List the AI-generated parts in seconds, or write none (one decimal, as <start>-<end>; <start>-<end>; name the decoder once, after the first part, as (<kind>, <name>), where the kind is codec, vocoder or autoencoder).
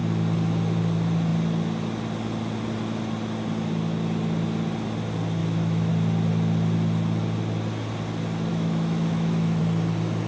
5.4-5.9 (autoencoder, DAC-VAE); 8.5-9.6